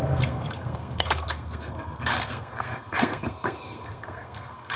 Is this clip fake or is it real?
fake